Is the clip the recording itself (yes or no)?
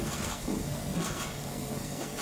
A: no